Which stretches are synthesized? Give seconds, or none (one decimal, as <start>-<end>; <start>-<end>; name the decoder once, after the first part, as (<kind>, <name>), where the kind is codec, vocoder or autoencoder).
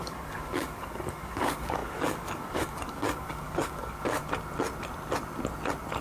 0.0-4.2 (codec, DAC)